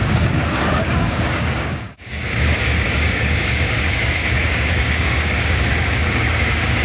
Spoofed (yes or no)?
yes